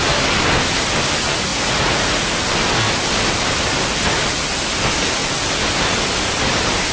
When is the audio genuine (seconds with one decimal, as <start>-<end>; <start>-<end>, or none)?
0.0-1.5; 2.3-6.9